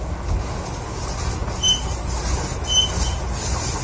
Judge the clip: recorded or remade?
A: recorded